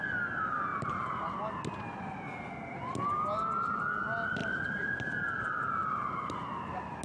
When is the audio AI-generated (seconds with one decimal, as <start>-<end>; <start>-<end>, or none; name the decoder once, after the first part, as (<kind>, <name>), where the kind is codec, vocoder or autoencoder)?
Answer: 0.7-1.3 (vocoder, BigVGAN v2); 4.4-5.0; 5.8-6.4